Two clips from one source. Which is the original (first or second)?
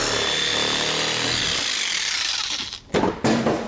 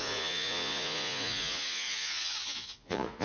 first